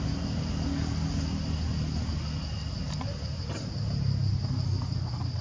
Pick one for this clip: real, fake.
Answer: real